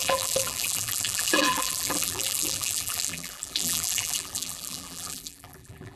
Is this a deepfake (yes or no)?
yes